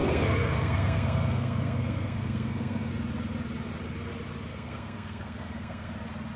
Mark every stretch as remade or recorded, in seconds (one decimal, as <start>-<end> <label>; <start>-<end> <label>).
0.0-2.9 remade; 2.9-4.5 recorded; 4.5-5.9 remade; 5.9-6.4 recorded